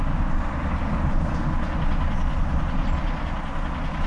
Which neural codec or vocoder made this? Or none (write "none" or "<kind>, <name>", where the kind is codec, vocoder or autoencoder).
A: none